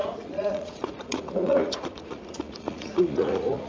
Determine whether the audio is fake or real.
fake